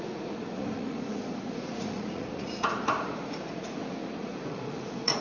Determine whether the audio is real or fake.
fake